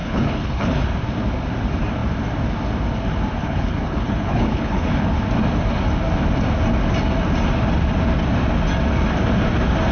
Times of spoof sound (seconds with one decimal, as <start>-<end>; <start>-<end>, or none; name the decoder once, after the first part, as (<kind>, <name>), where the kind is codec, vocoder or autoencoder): 0.0-0.9 (codec, HILCodec); 3.4-5.2